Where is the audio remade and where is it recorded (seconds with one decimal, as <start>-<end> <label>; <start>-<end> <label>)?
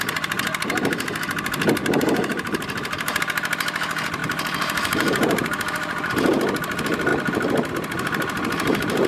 0.0-1.8 recorded; 1.8-3.2 remade; 3.2-4.2 recorded; 4.2-6.1 remade; 6.1-9.1 recorded